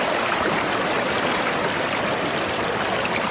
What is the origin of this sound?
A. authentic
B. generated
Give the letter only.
B